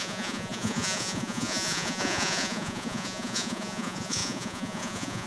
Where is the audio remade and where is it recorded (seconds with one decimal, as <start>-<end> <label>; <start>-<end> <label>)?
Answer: 0.0-5.3 remade